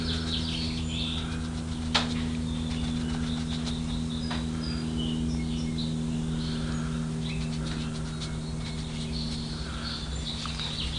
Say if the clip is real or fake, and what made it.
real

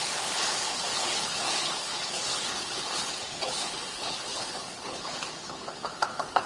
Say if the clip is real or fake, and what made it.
fake, codec, HILCodec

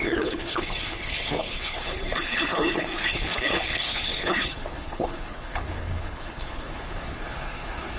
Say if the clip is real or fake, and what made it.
fake, codec, HILCodec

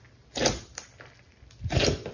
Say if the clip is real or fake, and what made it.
real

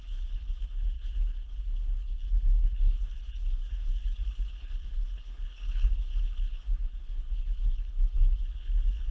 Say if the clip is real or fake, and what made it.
fake, codec, HILCodec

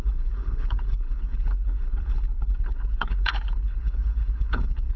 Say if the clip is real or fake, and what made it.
fake, codec, HILCodec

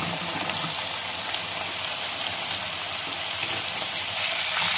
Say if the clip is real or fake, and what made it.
real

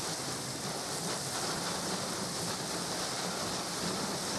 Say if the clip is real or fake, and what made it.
real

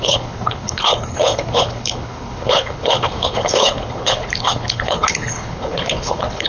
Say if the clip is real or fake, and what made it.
fake, codec, HILCodec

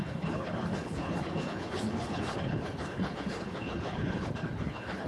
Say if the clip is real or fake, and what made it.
fake, codec, HILCodec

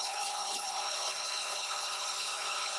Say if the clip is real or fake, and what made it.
fake, codec, HILCodec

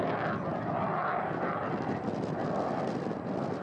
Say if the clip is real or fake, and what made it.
real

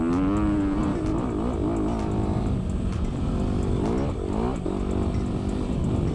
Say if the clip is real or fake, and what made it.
real